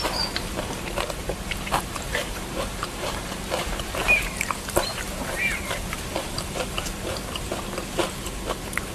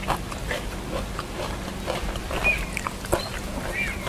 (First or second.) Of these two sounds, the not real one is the first